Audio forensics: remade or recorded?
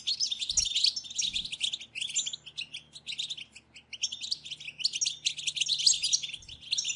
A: recorded